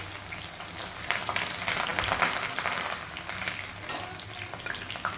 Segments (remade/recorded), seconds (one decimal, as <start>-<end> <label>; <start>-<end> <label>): 0.0-5.2 recorded